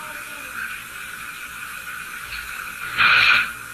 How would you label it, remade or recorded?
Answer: recorded